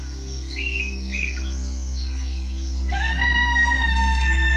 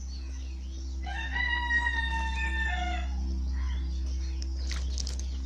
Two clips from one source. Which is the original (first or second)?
second